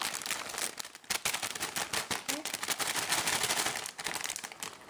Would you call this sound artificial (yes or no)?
no